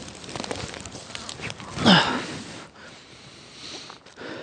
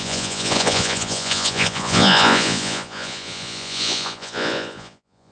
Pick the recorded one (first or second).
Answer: first